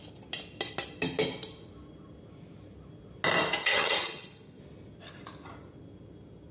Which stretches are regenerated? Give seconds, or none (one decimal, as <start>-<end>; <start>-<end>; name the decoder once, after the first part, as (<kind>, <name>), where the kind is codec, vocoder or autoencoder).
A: 3.6-4.6 (vocoder, HiFi-GAN)